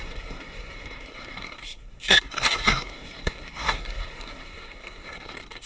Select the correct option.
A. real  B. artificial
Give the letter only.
B